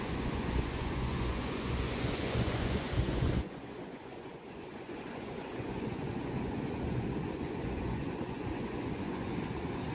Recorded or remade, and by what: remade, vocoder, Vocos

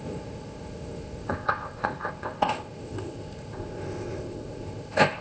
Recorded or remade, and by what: remade, codec, ZipCodec